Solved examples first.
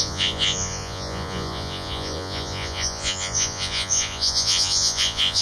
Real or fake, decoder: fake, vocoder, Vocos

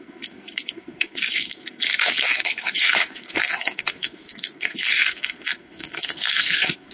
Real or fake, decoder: fake, codec, SNAC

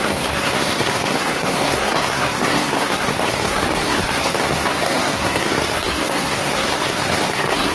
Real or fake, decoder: fake, codec, SNAC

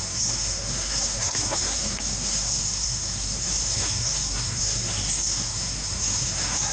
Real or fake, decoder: fake, codec, SNAC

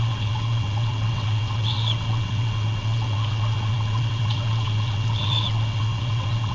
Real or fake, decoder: fake, vocoder, WaveNeXt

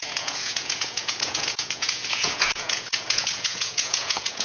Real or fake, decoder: fake, vocoder, Vocos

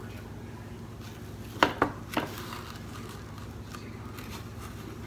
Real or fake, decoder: real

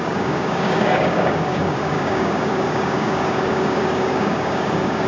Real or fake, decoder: fake, codec, DAC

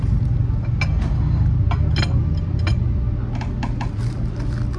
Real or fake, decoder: real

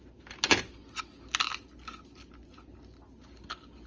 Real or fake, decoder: real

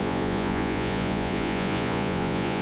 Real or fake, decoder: fake, vocoder, Vocos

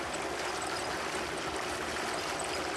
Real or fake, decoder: real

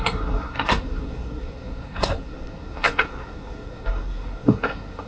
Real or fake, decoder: fake, codec, SNAC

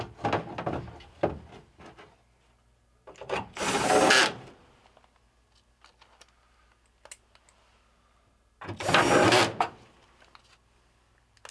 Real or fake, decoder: real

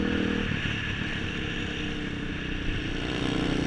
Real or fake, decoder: real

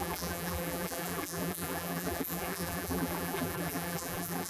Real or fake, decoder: fake, vocoder, BigVGAN v2